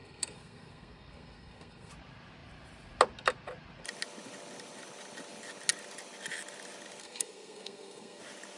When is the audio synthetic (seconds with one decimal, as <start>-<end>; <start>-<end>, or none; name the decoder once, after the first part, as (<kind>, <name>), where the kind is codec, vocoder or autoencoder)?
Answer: 0.0-1.9 (codec, SNAC); 7.0-8.2